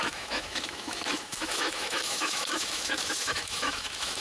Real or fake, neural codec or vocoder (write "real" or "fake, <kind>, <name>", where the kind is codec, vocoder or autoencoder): fake, autoencoder, DAC-VAE